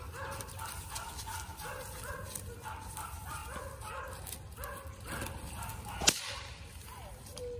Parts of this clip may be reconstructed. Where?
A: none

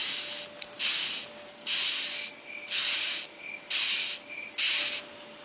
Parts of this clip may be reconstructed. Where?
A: none

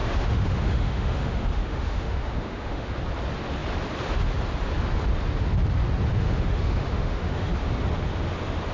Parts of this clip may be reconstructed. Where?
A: 0.0-3.0 (autoencoder, DAC-VAE); 6.1-7.5